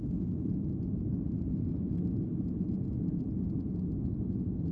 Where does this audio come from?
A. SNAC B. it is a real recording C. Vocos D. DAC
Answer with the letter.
B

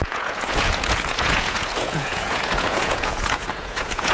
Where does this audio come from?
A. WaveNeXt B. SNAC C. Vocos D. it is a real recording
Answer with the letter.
C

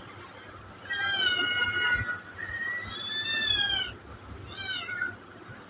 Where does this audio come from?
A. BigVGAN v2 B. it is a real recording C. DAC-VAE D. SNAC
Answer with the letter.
B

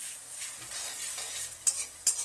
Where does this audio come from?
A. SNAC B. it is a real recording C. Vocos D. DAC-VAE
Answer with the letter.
B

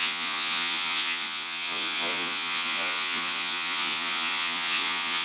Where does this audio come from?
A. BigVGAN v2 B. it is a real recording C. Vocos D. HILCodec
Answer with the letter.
C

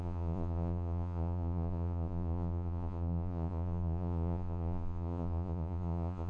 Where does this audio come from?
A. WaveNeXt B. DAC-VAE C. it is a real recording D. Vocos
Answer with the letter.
D